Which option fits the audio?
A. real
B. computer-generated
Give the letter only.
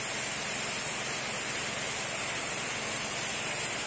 A